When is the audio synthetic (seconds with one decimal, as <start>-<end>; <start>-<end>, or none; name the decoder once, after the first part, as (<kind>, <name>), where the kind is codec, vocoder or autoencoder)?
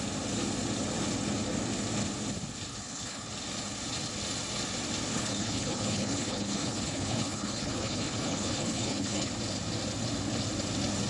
2.7-3.3 (codec, HILCodec); 5.1-9.3